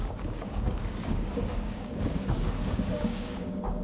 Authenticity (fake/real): fake